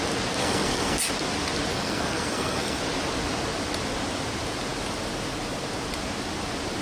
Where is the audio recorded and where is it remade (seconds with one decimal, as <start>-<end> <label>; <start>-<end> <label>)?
0.0-0.4 recorded; 0.4-1.0 remade; 1.0-1.7 recorded; 1.7-2.8 remade; 2.8-6.8 recorded